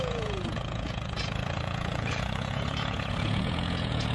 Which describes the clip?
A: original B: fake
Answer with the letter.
B